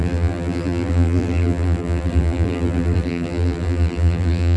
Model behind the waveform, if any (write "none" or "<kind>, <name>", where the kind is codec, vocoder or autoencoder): vocoder, BigVGAN v2